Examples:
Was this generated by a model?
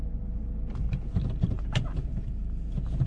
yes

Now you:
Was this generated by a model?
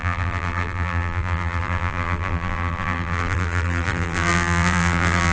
yes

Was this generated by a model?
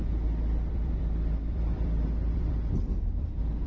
yes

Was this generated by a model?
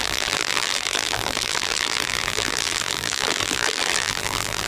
yes